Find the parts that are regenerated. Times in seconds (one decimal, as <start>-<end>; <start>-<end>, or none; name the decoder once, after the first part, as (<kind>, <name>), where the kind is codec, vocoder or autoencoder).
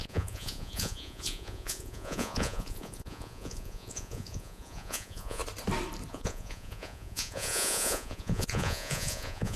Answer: 0.0-5.4 (vocoder, Vocos); 6.1-9.6